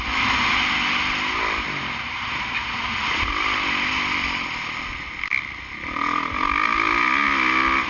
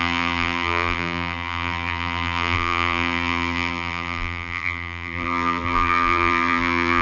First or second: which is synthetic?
second